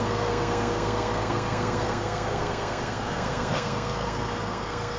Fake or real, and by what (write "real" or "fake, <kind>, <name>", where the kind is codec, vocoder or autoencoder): fake, codec, SNAC